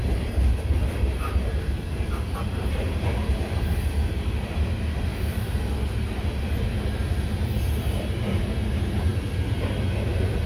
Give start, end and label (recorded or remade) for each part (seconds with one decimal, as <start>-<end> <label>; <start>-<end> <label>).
0.0-5.1 recorded; 5.1-7.7 remade; 7.7-10.5 recorded